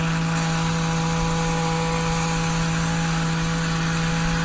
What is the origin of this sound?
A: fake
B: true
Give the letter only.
B